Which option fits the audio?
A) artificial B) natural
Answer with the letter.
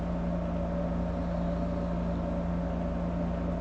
B